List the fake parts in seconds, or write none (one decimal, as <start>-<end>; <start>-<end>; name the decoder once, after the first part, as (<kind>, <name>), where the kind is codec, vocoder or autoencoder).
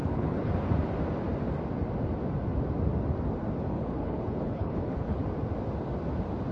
0.0-0.5 (codec, HILCodec); 3.6-5.2